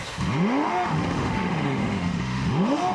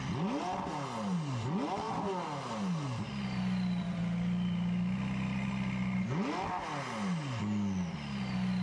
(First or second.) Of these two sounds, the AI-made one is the first